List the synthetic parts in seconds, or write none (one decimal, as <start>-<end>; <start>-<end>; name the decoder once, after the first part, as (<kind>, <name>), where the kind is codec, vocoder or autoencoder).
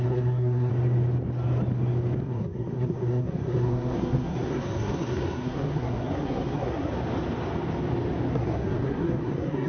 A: 0.0-0.7 (codec, SNAC); 2.2-6.9; 8.3-9.7